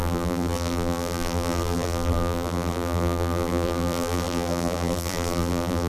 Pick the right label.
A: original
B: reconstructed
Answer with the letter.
B